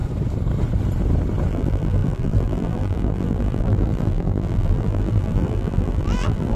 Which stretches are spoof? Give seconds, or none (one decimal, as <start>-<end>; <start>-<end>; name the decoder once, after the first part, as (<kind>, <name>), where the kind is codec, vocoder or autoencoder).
1.5-6.6 (vocoder, BigVGAN v2)